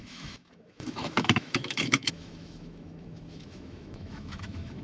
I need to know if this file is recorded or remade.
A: remade